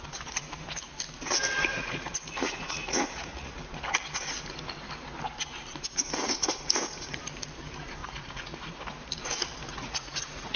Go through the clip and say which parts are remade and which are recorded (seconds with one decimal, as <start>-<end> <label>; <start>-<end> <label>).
0.0-1.7 recorded; 1.7-3.5 remade; 3.5-8.0 recorded; 8.0-8.8 remade; 8.8-9.7 recorded; 9.7-10.6 remade